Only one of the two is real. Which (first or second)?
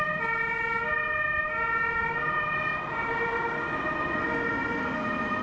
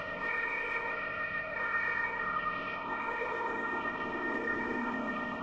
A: first